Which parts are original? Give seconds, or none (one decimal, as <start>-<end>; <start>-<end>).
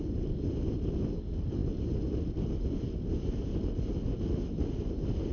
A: 0.0-5.3